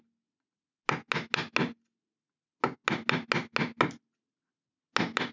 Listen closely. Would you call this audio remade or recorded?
recorded